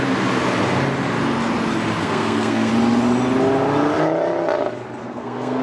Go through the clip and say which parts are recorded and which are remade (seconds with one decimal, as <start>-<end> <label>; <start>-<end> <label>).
0.0-2.0 recorded; 2.0-2.7 remade; 2.7-5.0 recorded; 5.0-5.6 remade